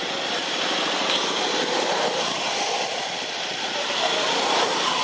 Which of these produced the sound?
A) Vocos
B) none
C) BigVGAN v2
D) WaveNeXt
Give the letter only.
C